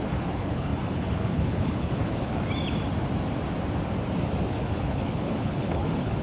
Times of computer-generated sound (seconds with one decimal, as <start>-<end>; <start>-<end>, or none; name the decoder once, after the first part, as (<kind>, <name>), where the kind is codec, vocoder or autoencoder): 0.0-2.3 (codec, HILCodec); 4.5-6.2